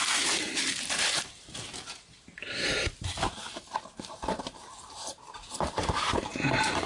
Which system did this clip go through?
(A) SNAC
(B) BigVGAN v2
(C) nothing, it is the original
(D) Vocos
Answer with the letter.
B